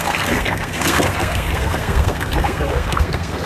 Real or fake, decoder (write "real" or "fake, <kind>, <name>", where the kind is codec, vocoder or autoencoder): fake, codec, SNAC